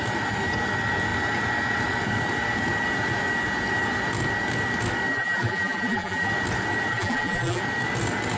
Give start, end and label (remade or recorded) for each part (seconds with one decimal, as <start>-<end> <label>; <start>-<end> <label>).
0.0-5.1 recorded; 5.1-6.3 remade; 6.3-6.9 recorded; 6.9-7.6 remade; 7.6-8.4 recorded